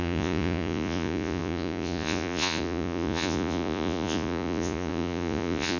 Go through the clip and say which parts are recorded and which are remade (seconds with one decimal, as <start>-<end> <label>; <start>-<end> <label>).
0.0-5.8 remade